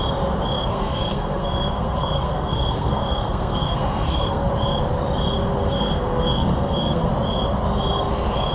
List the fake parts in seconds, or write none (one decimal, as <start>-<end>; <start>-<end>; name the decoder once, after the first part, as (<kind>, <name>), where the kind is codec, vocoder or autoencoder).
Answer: 0.7-4.5 (codec, SNAC); 5.6-7.1